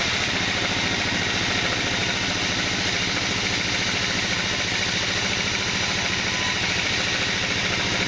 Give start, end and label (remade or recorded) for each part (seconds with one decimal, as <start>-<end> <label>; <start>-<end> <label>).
0.0-8.1 recorded